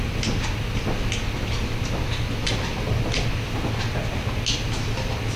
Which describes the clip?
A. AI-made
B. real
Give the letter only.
B